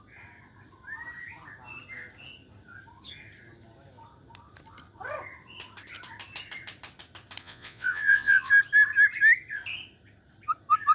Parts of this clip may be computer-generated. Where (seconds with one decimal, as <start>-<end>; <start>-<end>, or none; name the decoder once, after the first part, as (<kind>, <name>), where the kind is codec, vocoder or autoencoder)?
7.4-8.5 (vocoder, Vocos)